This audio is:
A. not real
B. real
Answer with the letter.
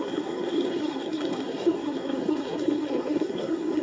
A